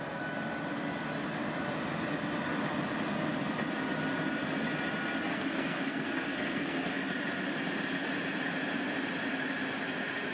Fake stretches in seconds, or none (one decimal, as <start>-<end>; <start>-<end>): 5.3-6.9